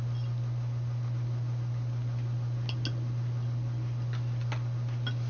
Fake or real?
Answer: real